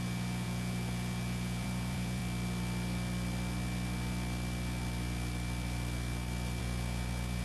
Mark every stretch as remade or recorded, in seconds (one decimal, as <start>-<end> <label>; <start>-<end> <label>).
0.0-2.2 remade; 2.2-6.6 recorded; 6.6-7.4 remade